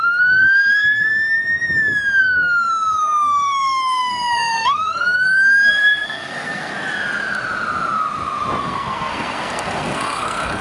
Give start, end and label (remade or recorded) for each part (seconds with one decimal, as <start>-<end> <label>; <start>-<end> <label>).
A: 0.0-1.1 remade; 1.1-2.2 recorded; 2.2-6.7 remade; 6.7-8.6 recorded; 8.6-10.6 remade